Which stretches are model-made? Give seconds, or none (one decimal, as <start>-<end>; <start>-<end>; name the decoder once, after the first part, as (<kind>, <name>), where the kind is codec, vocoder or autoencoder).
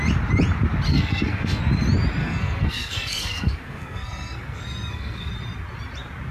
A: 0.9-1.6 (codec, SNAC); 2.2-5.3